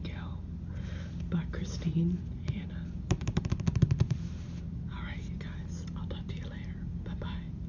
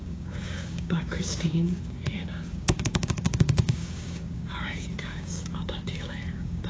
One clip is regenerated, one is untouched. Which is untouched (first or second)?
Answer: first